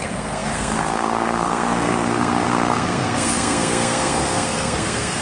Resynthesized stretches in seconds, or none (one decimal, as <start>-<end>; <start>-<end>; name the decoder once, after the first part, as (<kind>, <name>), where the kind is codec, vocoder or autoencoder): 0.0-5.2 (codec, SNAC)